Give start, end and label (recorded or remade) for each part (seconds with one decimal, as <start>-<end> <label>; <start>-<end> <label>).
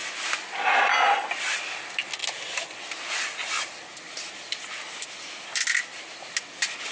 0.0-6.9 recorded